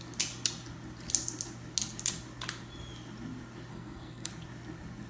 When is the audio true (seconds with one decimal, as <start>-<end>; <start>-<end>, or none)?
0.0-3.7; 4.3-5.1